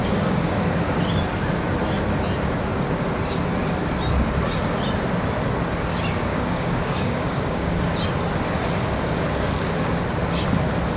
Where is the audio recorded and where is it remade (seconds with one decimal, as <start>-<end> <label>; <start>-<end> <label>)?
0.0-0.5 remade; 0.5-5.9 recorded; 5.9-7.9 remade; 7.9-11.0 recorded